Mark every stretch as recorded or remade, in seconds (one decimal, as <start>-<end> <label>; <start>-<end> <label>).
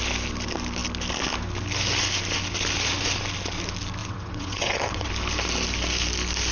0.0-4.0 recorded; 4.0-5.1 remade; 5.1-6.5 recorded